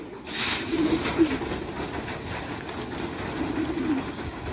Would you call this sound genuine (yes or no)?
yes